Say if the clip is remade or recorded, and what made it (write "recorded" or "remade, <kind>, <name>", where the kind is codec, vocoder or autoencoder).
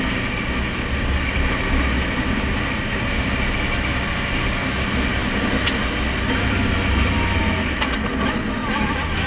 recorded